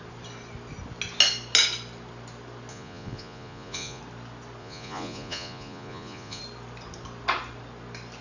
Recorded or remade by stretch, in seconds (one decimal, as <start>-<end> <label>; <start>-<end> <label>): 0.0-2.7 recorded; 2.7-4.0 remade; 4.0-4.6 recorded; 4.6-6.4 remade; 6.4-8.2 recorded